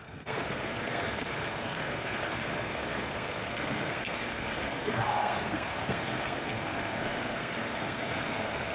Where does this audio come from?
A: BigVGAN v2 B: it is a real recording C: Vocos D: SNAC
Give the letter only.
D